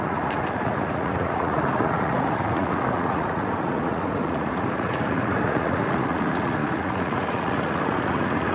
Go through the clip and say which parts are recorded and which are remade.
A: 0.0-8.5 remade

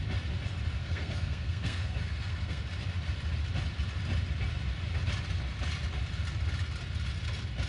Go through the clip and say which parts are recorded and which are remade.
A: 0.0-0.8 recorded; 0.8-2.6 remade; 2.6-7.7 recorded

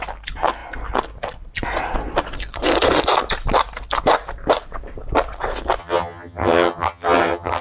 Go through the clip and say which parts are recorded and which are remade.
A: 0.0-5.8 recorded; 5.8-7.6 remade